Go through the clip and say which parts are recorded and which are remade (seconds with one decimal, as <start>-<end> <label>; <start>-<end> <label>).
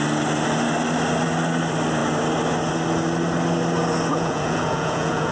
0.0-4.1 recorded; 4.1-5.3 remade